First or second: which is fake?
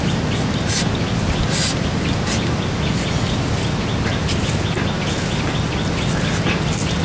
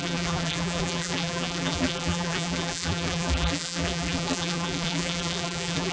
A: second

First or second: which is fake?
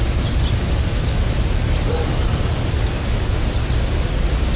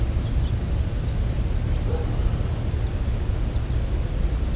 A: first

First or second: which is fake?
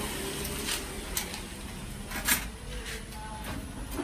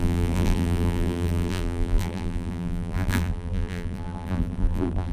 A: second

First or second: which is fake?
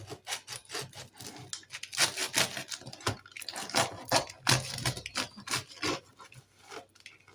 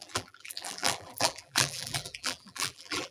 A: second